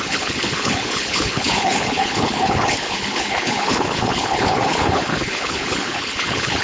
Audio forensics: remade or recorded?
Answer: remade